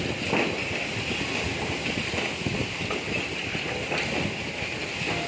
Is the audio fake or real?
real